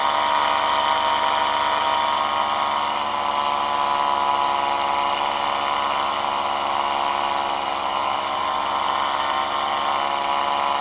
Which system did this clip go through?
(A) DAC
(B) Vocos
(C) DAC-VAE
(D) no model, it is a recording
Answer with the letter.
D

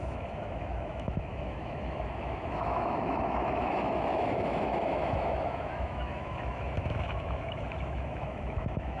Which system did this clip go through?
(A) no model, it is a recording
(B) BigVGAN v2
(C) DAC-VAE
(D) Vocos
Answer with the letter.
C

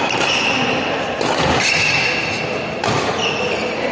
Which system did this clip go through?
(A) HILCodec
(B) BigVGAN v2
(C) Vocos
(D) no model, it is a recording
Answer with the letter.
D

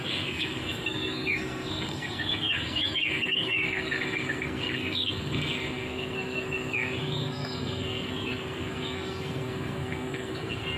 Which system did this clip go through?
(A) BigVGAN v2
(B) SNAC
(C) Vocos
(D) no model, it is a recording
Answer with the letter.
B